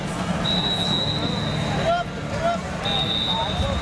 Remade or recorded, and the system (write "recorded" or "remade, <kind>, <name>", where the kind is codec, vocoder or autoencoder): recorded